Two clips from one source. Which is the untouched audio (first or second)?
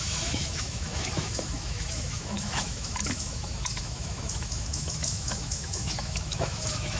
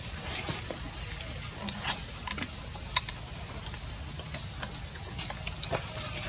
second